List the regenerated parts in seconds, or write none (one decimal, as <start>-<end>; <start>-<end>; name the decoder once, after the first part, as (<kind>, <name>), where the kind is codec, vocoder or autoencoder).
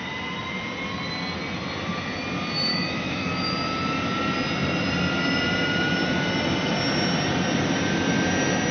2.7-3.3 (autoencoder, DAC-VAE)